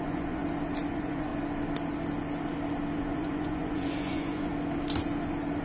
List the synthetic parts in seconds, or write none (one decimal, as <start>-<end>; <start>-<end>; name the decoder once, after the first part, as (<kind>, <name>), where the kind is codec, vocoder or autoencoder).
0.0-0.4 (vocoder, Vocos); 0.9-1.3; 3.0-4.5